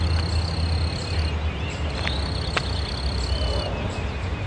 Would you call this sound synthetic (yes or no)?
no